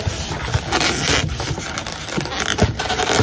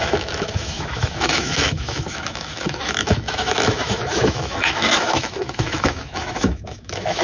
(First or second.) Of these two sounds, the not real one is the second